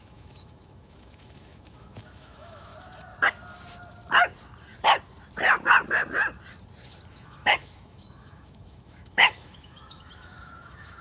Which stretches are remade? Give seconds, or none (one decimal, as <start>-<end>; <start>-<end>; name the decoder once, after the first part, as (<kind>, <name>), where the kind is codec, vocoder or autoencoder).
0.0-2.7 (autoencoder, DAC-VAE); 7.1-11.0

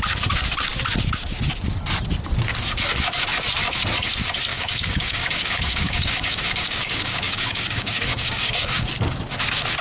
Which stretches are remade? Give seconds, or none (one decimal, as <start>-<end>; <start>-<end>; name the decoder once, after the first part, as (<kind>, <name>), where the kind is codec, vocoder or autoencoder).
4.5-8.9 (codec, DAC)

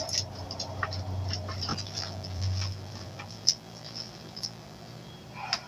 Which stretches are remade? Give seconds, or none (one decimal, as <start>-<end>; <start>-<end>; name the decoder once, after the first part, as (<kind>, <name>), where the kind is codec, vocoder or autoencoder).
1.7-5.1 (vocoder, BigVGAN v2)

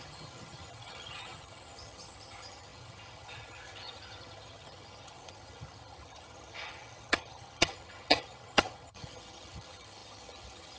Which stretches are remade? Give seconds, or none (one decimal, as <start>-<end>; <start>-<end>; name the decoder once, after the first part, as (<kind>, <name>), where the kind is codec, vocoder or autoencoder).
0.0-10.8 (vocoder, HiFi-GAN)

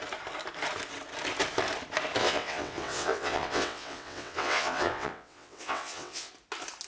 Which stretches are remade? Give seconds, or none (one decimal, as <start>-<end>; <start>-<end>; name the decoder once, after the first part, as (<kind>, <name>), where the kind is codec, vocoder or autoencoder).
2.2-6.3 (vocoder, WaveNeXt)